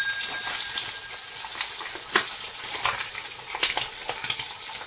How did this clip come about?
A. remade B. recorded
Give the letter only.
B